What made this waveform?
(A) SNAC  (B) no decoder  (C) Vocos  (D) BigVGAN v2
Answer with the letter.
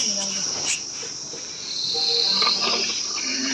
B